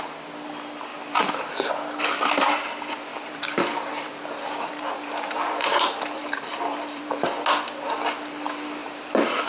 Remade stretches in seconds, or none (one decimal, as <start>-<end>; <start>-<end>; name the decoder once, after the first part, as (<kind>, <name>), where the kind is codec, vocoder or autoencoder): 0.9-1.7 (vocoder, BigVGAN v2); 3.1-7.2; 8.8-9.5